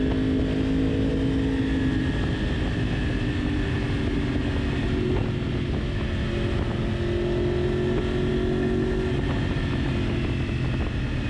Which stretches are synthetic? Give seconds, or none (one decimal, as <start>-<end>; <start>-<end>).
none